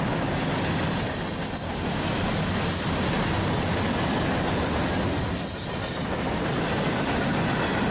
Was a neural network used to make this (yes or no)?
no